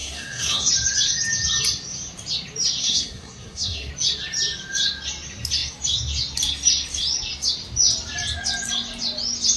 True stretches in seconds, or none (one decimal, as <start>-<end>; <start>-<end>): 0.7-2.8; 3.9-9.6